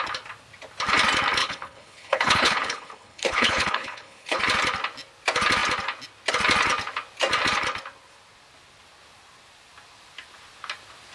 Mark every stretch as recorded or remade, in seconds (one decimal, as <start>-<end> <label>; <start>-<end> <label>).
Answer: 0.0-1.4 recorded; 1.4-4.4 remade; 4.4-11.1 recorded